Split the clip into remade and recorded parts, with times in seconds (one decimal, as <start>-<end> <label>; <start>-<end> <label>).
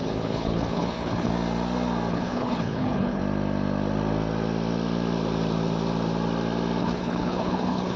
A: 0.0-1.3 remade; 1.3-2.1 recorded; 2.1-3.2 remade; 3.2-6.8 recorded; 6.8-8.0 remade